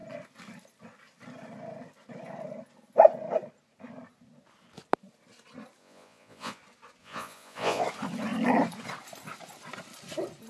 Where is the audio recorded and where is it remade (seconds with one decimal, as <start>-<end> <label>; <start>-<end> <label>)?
0.0-5.8 recorded; 5.8-6.6 remade; 6.6-7.0 recorded; 7.0-7.8 remade; 7.8-10.5 recorded